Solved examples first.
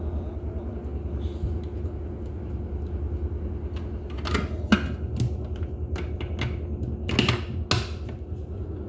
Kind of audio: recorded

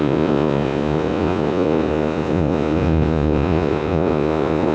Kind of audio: remade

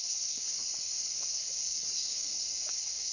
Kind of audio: remade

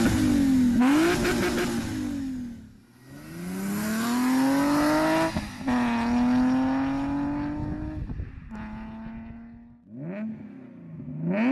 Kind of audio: recorded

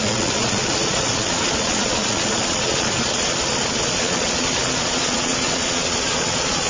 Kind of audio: remade